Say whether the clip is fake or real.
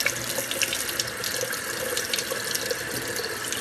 real